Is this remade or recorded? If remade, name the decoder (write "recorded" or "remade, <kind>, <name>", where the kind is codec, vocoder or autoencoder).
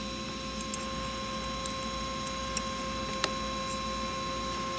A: recorded